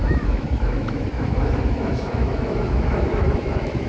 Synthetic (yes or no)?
yes